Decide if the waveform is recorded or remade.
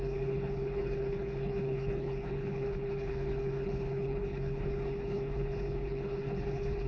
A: remade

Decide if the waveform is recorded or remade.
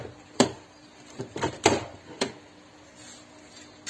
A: remade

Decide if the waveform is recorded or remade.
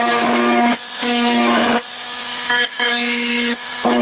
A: remade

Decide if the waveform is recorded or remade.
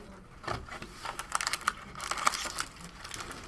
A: recorded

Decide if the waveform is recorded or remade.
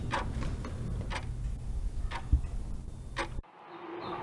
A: recorded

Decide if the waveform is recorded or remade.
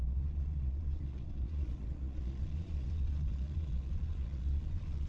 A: remade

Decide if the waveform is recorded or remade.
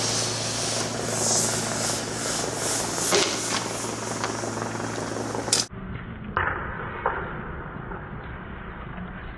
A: recorded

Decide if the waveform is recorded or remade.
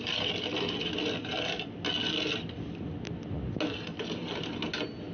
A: recorded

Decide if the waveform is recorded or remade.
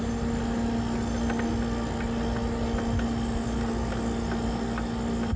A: recorded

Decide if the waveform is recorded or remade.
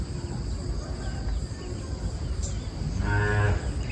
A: recorded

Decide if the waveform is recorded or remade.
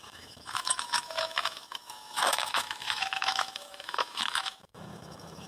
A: remade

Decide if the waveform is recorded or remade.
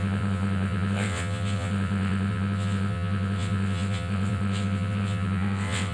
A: remade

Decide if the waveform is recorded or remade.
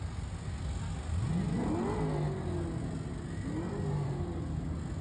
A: recorded